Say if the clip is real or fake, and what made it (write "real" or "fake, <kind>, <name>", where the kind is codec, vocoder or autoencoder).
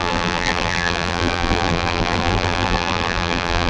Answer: fake, vocoder, BigVGAN v2